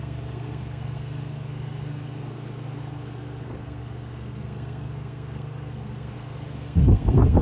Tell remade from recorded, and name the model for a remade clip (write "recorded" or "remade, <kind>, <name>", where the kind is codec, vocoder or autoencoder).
remade, codec, SNAC